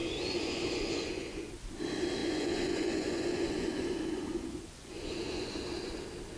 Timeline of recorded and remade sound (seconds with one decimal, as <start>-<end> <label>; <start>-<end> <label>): 0.0-1.5 remade; 1.5-2.2 recorded; 2.2-6.0 remade; 6.0-6.4 recorded